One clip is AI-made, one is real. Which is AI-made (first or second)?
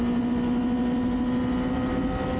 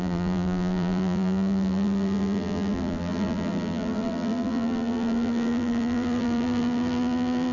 second